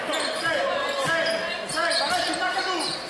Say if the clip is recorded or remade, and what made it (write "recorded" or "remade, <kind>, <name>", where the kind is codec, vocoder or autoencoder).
recorded